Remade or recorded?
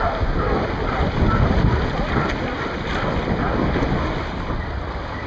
recorded